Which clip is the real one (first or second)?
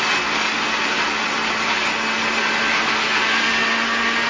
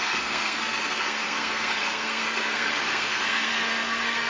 first